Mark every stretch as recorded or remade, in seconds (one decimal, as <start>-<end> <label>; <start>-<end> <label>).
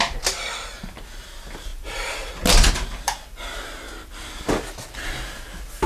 0.0-5.9 recorded